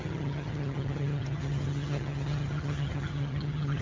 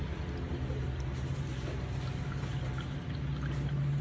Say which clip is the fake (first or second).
first